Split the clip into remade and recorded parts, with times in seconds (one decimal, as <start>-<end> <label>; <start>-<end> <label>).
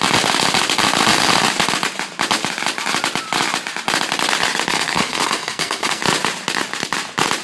0.0-4.7 recorded; 4.7-6.0 remade; 6.0-7.4 recorded